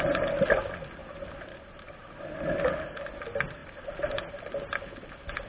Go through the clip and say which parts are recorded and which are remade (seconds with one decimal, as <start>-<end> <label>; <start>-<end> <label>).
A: 0.0-1.0 recorded; 1.0-2.2 remade; 2.2-5.5 recorded